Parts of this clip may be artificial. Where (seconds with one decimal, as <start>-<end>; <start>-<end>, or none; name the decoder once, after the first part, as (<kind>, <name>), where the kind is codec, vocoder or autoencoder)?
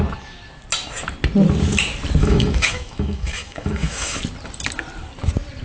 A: 2.2-4.2 (autoencoder, DAC-VAE)